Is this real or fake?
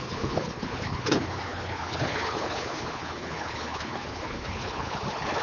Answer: fake